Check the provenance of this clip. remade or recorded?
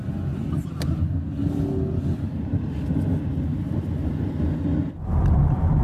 recorded